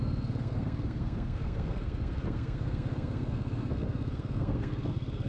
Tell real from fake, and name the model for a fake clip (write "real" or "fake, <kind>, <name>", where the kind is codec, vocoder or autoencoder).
fake, codec, SNAC